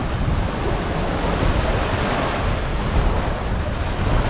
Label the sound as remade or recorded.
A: recorded